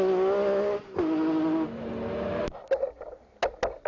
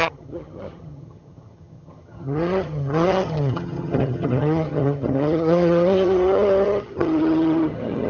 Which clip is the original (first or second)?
first